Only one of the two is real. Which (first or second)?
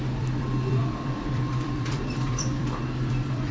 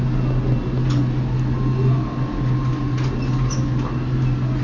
second